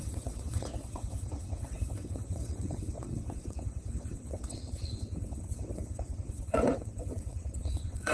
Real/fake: fake